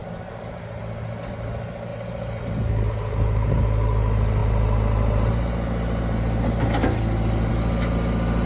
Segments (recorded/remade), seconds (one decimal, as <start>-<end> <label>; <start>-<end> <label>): 0.0-1.9 recorded; 1.9-2.4 remade; 2.4-8.5 recorded